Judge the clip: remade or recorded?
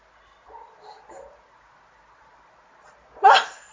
recorded